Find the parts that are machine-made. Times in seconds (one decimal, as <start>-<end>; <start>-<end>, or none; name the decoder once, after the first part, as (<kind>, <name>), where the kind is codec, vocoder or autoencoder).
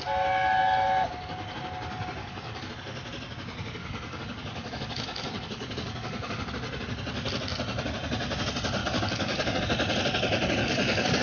2.2-2.7 (codec, DAC); 3.8-6.5; 8.8-9.6; 10.6-11.2